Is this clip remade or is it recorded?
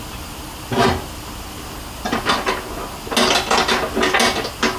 recorded